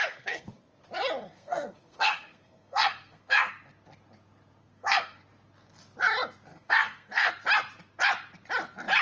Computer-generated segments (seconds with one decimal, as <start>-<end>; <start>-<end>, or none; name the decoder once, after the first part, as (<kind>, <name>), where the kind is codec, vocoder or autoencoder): 0.0-0.5 (codec, SNAC); 1.3-3.5; 4.6-5.2; 6.5-7.3